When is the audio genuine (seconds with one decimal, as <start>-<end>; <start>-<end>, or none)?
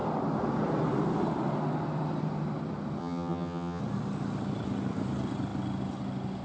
0.0-3.0; 3.8-6.4